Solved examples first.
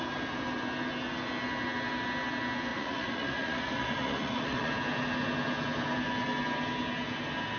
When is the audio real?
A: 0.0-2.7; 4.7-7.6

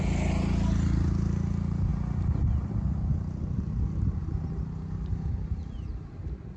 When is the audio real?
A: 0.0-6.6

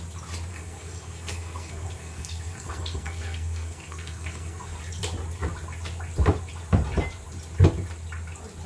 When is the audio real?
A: 0.0-0.5; 4.8-8.7

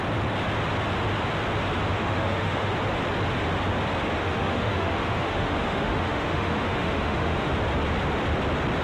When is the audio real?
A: 0.0-1.9; 2.7-4.2; 7.5-8.8

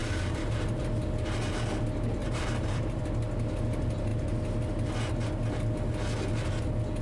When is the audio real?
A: 0.8-2.2; 3.0-7.0